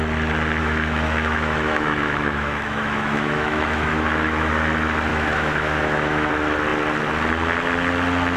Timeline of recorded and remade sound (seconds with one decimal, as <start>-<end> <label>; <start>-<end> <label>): 0.0-0.6 recorded; 0.6-4.5 remade; 4.5-5.1 recorded; 5.1-6.3 remade; 6.3-8.4 recorded